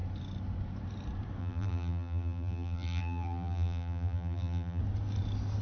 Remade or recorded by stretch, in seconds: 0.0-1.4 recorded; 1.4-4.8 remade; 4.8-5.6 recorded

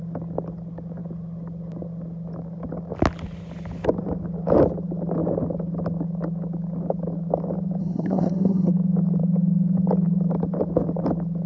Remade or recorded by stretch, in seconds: 0.0-7.8 recorded; 7.8-8.7 remade; 8.7-11.5 recorded

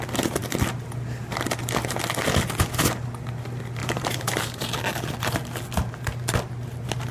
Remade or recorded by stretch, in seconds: 0.0-3.8 recorded; 3.8-4.7 remade; 4.7-7.1 recorded

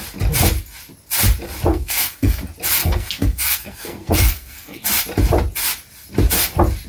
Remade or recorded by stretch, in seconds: 0.0-1.7 recorded; 1.7-2.4 remade; 2.4-2.8 recorded; 2.8-4.8 remade; 4.8-6.9 recorded